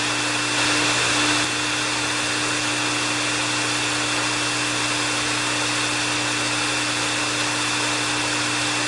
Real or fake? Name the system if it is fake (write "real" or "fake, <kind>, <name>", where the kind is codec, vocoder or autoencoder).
real